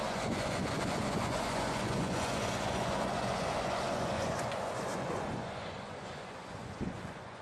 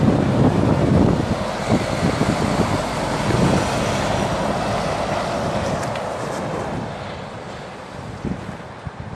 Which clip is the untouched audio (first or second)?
second